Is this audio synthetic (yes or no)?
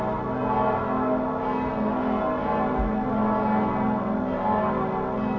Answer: no